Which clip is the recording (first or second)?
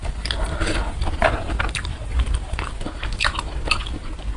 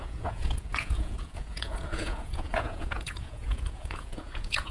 first